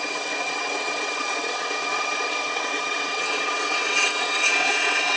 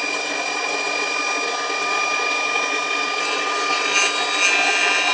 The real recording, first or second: second